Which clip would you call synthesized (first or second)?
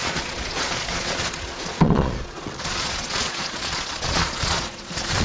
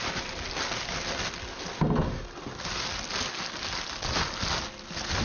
first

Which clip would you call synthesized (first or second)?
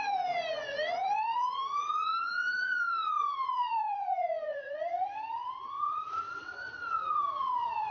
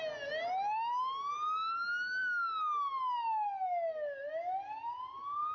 first